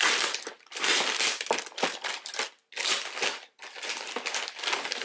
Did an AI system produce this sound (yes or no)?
no